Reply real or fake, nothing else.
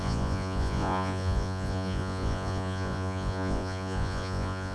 fake